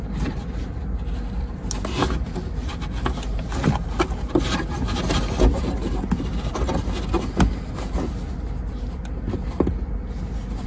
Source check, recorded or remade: recorded